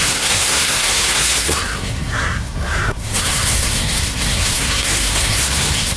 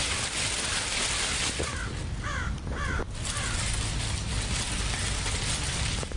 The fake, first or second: first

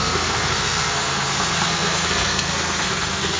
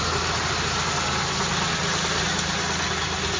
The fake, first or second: first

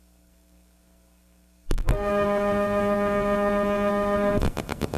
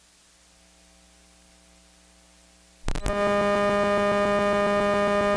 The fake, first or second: first